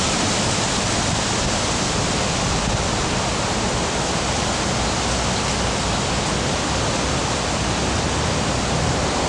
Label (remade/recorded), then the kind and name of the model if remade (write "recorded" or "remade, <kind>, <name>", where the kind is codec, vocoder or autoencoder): recorded